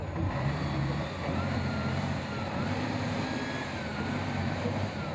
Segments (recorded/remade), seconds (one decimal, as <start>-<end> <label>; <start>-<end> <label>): 0.0-3.1 remade; 3.1-5.1 recorded

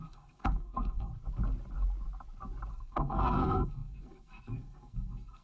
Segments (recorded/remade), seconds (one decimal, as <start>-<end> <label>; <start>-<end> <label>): 0.0-1.1 remade; 1.1-2.7 recorded; 2.7-5.4 remade

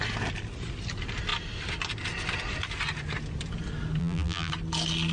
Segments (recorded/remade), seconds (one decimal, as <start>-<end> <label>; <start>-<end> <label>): 0.0-4.0 recorded; 4.0-4.5 remade; 4.5-5.1 recorded

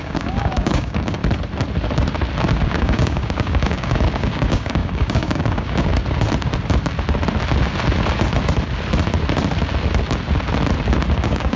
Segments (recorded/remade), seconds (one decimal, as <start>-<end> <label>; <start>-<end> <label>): 0.0-1.2 remade; 1.2-2.6 recorded; 2.6-5.9 remade; 5.9-11.1 recorded; 11.1-11.6 remade

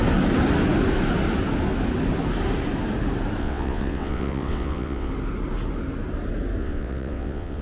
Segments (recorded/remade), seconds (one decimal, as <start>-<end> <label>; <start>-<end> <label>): 0.0-3.4 recorded; 3.4-5.1 remade; 5.1-6.6 recorded; 6.6-7.6 remade